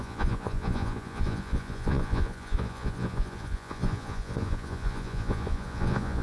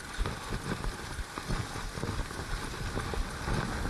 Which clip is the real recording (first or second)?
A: second